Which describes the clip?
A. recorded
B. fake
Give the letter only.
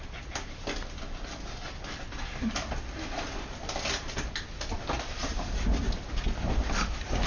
A